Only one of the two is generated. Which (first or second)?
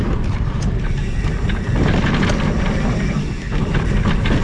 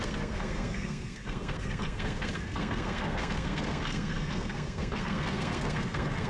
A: second